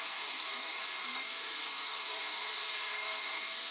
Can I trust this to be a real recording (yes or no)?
no